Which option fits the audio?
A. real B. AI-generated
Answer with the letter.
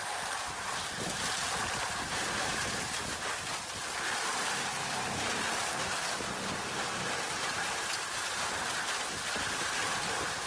A